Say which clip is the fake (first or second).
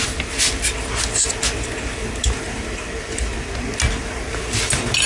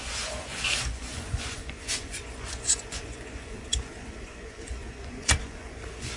second